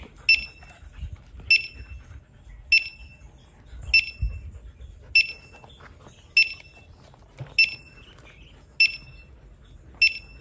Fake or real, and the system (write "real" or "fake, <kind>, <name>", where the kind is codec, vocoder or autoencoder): real